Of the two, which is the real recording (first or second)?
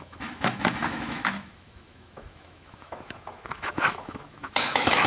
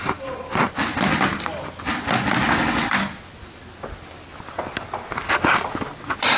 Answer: second